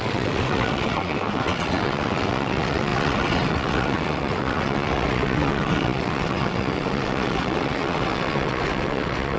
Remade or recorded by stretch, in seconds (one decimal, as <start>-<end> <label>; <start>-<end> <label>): 0.0-9.4 remade